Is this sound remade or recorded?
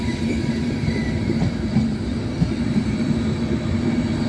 recorded